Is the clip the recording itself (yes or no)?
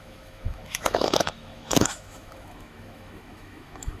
no